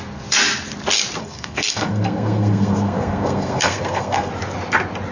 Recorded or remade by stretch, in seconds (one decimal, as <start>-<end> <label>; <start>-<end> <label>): 0.0-1.2 recorded; 1.2-4.3 remade; 4.3-5.1 recorded